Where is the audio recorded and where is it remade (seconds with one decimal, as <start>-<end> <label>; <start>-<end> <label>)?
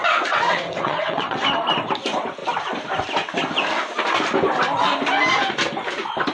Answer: 0.0-1.4 remade; 1.4-6.3 recorded